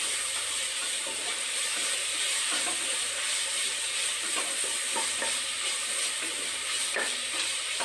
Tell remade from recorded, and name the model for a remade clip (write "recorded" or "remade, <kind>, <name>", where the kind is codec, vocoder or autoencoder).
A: remade, vocoder, BigVGAN v2